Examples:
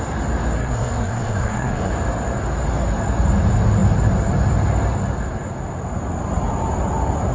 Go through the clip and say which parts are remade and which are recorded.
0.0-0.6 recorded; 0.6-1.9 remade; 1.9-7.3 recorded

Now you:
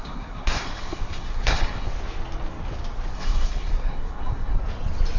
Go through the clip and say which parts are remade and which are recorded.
0.0-1.9 remade; 1.9-3.1 recorded; 3.1-4.6 remade; 4.6-5.2 recorded

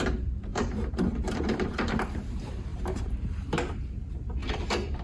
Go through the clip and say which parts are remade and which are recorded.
0.0-0.5 recorded; 0.5-2.1 remade; 2.1-2.7 recorded; 2.7-3.8 remade; 3.8-4.4 recorded; 4.4-5.0 remade

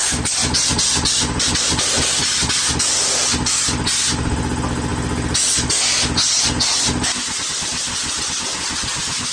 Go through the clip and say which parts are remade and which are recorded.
0.0-2.2 remade; 2.2-9.3 recorded

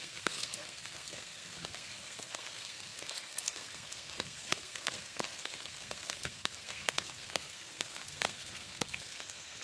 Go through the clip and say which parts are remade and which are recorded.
0.0-9.6 remade

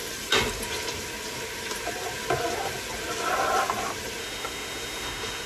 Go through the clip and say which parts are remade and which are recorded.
0.0-4.2 recorded; 4.2-5.5 remade